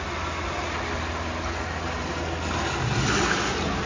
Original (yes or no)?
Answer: yes